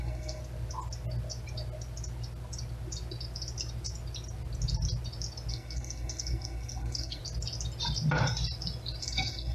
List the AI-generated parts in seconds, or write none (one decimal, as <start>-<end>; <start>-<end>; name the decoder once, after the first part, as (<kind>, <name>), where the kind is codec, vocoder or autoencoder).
0.0-0.4 (codec, SNAC); 5.5-7.2; 9.0-9.5